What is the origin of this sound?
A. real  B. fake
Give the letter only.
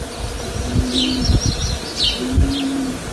A